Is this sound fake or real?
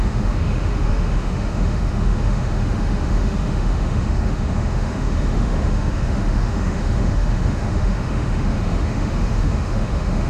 fake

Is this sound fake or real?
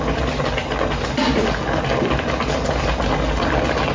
real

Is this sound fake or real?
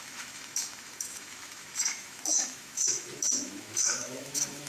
fake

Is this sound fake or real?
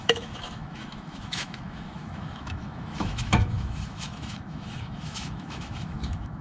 fake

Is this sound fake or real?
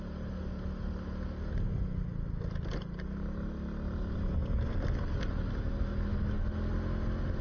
real